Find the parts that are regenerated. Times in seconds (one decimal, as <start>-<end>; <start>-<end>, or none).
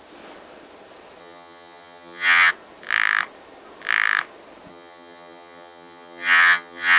1.2-2.5; 4.7-7.0